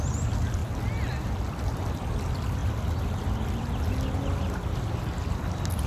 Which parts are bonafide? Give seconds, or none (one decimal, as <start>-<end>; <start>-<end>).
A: 0.0-5.9